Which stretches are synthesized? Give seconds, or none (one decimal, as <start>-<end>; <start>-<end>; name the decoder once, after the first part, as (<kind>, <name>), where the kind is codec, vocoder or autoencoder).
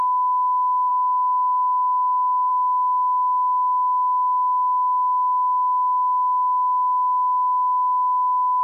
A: 0.9-2.5 (codec, SNAC)